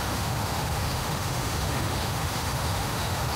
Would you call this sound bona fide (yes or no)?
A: no